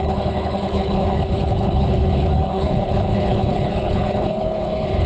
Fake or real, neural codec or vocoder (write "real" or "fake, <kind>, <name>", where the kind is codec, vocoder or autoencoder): fake, codec, HILCodec